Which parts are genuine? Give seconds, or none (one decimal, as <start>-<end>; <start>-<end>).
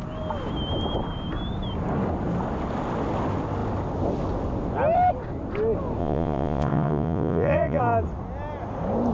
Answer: 0.0-6.0; 7.8-9.1